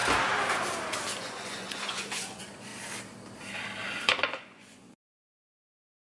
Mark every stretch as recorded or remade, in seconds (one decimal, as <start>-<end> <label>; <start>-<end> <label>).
0.0-1.1 recorded; 1.1-2.7 remade; 2.7-3.9 recorded; 3.9-6.0 remade